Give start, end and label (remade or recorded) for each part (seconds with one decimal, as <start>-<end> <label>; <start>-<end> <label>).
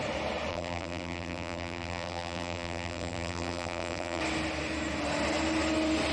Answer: 0.0-0.5 recorded; 0.5-4.2 remade; 4.2-6.1 recorded